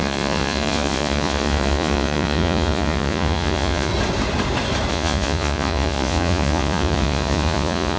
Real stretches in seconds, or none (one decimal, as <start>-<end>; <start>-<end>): 3.9-4.9